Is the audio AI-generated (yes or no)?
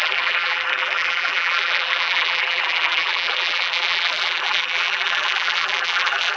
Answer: yes